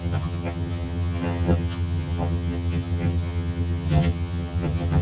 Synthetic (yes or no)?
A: yes